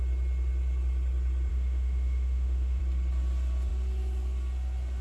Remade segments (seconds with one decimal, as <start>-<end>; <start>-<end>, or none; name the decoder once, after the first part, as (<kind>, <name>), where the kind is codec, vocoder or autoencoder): 1.5-2.8 (autoencoder, DAC-VAE)